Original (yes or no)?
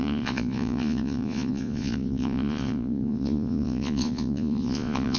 no